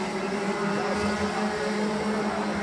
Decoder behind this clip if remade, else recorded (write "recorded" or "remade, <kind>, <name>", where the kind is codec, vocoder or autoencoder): recorded